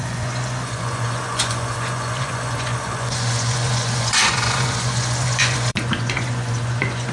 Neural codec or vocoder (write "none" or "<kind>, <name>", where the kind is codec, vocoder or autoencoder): vocoder, Vocos